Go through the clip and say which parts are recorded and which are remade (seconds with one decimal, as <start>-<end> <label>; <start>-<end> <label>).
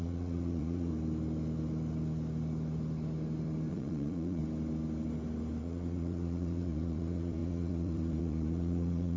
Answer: 0.0-0.9 remade; 0.9-3.7 recorded; 3.7-4.4 remade; 4.4-5.6 recorded; 5.6-9.2 remade